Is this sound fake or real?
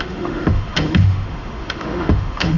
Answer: fake